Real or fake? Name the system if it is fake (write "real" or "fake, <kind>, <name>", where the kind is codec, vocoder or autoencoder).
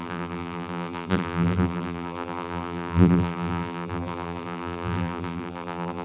fake, vocoder, BigVGAN v2